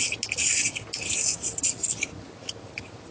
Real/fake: real